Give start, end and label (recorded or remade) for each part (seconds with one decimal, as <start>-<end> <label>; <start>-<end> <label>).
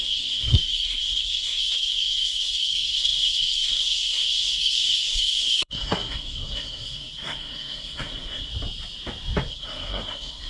0.0-8.5 remade; 8.5-9.5 recorded; 9.5-10.5 remade